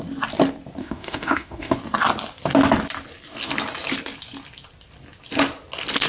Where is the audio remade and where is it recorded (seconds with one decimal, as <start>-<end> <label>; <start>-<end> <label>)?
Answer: 0.0-0.8 recorded; 0.8-1.7 remade; 1.7-6.1 recorded